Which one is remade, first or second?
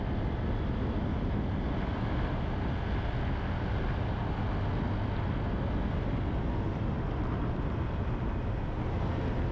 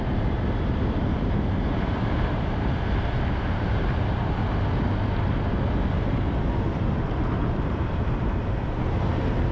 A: second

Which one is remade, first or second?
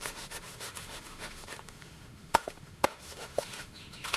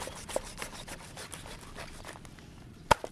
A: first